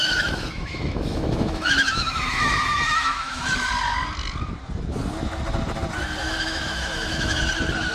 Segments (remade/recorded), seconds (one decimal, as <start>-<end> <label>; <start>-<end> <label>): 0.0-3.4 remade; 3.4-6.2 recorded; 6.2-7.4 remade; 7.4-7.9 recorded